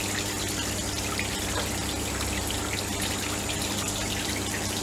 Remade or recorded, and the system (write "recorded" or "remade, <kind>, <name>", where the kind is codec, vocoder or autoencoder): recorded